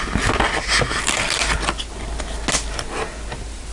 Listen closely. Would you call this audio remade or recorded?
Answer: recorded